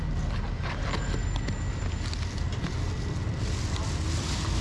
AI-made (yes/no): no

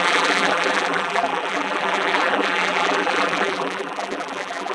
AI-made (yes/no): yes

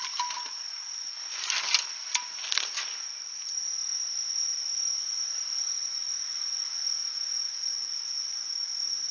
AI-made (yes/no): no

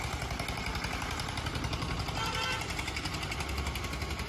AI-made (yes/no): no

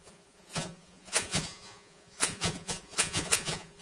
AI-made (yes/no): yes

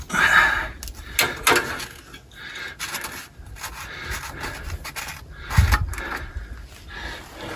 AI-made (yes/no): no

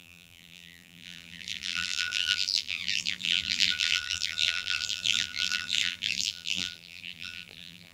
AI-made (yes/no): yes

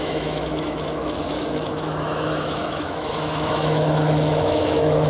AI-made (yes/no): yes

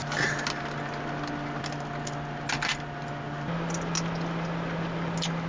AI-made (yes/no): no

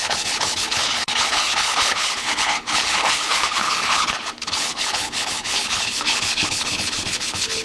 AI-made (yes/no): yes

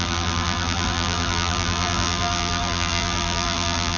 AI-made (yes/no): yes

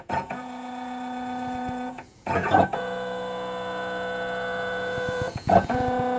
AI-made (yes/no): yes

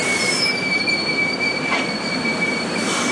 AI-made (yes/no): yes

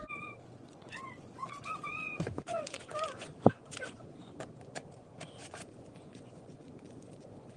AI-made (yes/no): yes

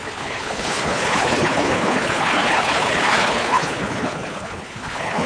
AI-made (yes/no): yes